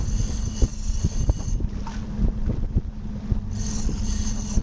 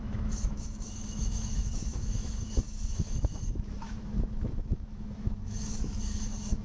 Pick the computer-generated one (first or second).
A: second